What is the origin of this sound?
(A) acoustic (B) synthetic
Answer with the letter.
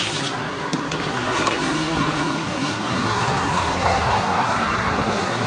B